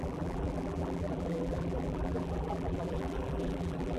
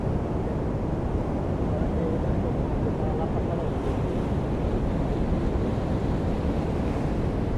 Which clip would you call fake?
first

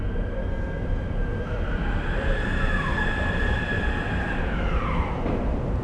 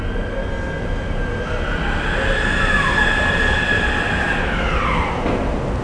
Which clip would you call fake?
first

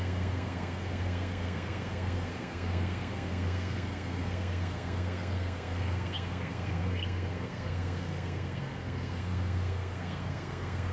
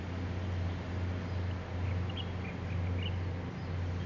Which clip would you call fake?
first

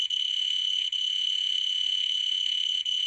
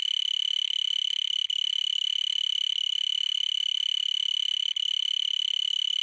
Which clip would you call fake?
first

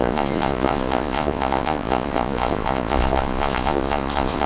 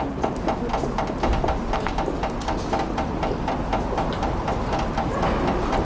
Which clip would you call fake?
first